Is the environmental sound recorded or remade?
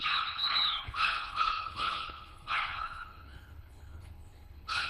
remade